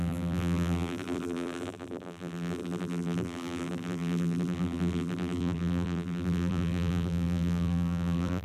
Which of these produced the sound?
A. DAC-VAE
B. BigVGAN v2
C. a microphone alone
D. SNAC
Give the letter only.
B